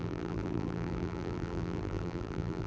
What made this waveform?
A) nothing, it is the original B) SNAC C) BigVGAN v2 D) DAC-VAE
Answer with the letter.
C